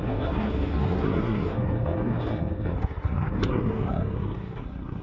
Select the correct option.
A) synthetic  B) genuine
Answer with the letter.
A